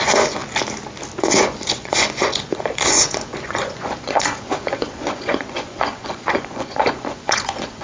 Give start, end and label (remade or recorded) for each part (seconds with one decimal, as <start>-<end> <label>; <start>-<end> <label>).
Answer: 0.0-0.4 remade; 0.4-1.2 recorded; 1.2-7.8 remade

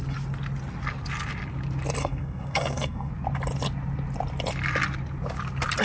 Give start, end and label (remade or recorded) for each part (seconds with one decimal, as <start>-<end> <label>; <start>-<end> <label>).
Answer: 0.0-2.0 recorded; 2.0-3.1 remade; 3.1-5.8 recorded